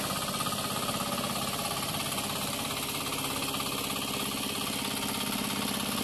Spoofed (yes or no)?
no